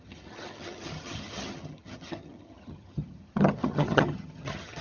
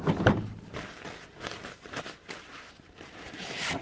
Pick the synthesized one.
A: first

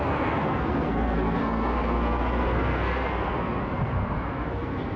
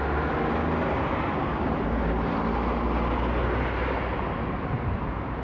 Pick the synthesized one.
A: first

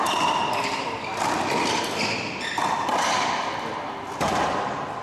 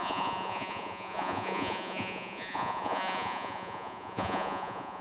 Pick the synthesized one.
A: second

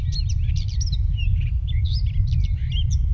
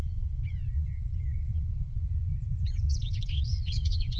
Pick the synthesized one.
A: second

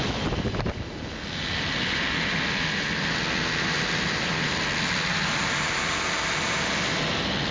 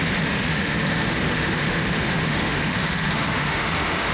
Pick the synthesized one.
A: second